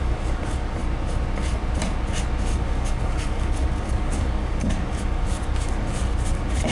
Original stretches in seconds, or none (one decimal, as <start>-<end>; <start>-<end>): 0.8-2.4